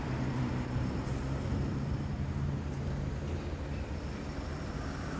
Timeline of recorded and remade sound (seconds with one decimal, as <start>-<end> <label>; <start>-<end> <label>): 0.0-5.2 recorded